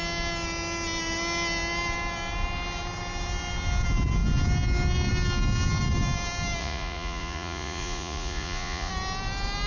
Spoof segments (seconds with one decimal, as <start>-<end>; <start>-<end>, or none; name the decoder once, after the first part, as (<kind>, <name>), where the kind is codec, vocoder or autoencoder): 6.6-8.9 (vocoder, Vocos)